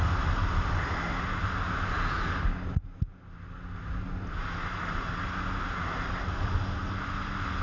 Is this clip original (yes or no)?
yes